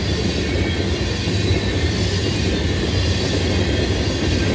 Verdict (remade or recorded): recorded